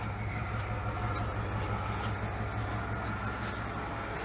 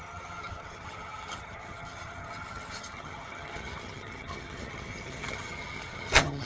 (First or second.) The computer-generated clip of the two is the second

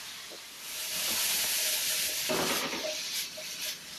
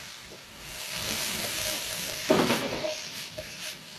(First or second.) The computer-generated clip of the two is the second